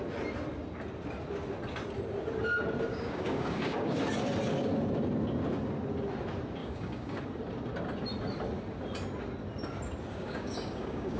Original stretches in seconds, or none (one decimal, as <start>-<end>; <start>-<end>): 0.0-2.9; 4.0-6.6; 7.2-10.1